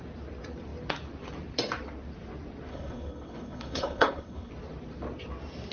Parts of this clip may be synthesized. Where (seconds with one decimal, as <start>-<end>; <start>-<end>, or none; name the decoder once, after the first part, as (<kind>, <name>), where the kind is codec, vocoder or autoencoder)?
2.7-4.5 (codec, HILCodec)